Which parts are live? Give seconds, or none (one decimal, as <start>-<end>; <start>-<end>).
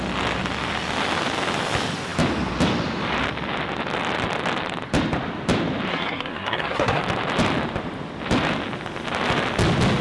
0.0-5.9; 7.0-10.0